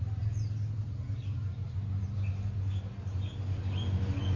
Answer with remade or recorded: recorded